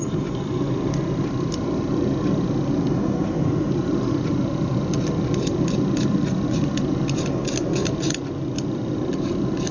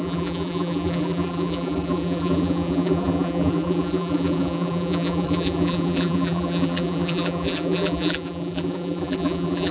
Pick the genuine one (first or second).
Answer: first